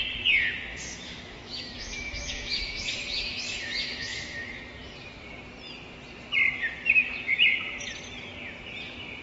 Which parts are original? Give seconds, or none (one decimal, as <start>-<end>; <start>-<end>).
0.0-0.7; 4.6-9.2